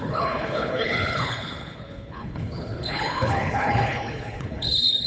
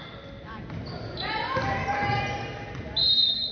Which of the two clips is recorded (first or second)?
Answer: second